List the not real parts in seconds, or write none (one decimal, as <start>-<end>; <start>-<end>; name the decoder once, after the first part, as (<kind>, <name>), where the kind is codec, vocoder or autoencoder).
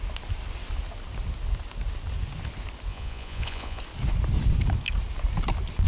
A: 2.9-3.8 (vocoder, Vocos)